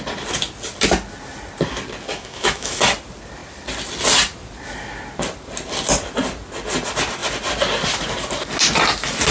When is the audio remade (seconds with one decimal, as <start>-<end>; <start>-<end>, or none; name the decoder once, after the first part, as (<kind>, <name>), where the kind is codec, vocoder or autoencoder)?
2.1-2.9 (autoencoder, DAC-VAE)